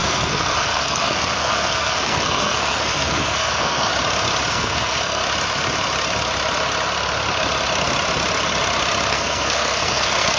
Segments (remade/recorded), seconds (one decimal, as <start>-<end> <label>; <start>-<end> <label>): 0.0-3.9 remade; 3.9-4.5 recorded; 4.5-5.2 remade; 5.2-9.1 recorded; 9.1-10.4 remade